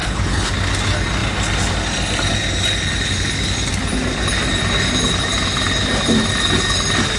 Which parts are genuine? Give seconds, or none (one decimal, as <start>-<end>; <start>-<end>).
0.5-7.2

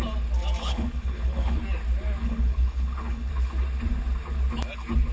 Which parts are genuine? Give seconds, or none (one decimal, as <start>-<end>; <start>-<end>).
0.0-0.6; 1.6-2.2; 3.3-5.1

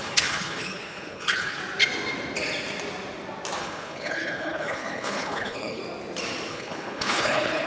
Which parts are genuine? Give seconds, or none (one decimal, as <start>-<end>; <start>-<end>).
1.6-3.6; 5.8-6.5

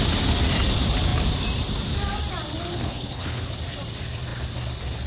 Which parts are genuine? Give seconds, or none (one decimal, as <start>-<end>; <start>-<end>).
0.0-2.7; 3.5-5.1

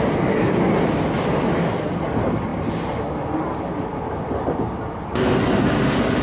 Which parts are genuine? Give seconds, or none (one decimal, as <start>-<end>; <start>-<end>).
0.0-6.2

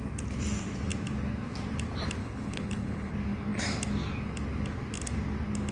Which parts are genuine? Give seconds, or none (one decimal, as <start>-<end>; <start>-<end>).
0.0-2.2; 3.1-5.7